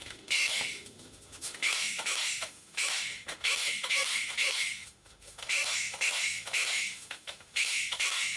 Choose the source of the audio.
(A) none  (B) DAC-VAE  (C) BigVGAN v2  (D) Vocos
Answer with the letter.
B